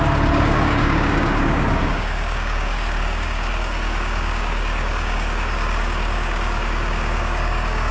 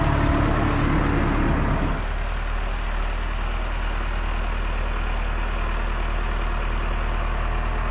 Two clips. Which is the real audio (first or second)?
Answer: second